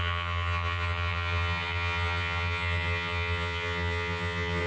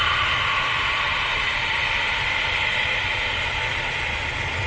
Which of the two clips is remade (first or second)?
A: first